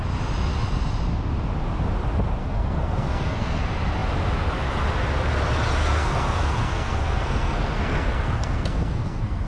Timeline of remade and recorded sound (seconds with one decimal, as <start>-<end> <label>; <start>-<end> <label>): 0.0-2.4 recorded; 2.4-3.6 remade; 3.6-5.8 recorded; 5.8-9.5 remade